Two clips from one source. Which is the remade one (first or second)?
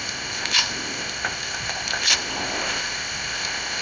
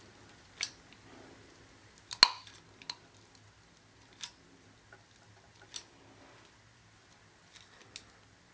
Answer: first